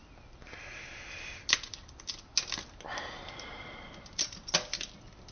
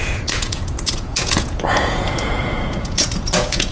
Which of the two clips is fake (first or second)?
second